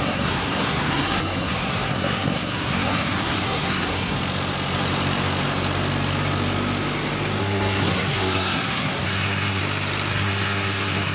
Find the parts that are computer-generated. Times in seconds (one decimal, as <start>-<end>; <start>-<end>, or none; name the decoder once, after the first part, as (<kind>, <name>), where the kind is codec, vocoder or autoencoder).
0.0-4.2 (codec, SNAC); 7.4-9.6; 10.1-11.1